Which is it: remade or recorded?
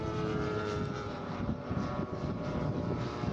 remade